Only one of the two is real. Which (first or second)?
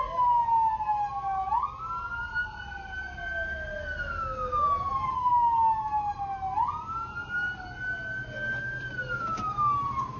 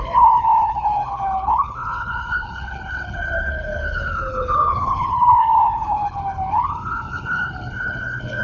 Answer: first